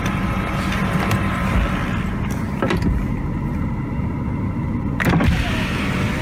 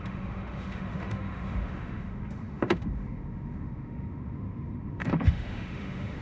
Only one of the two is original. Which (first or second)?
first